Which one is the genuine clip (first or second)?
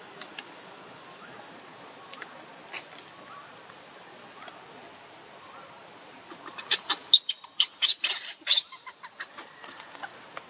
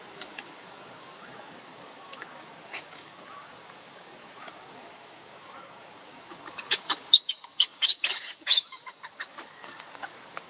first